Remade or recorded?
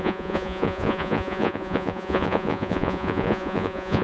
remade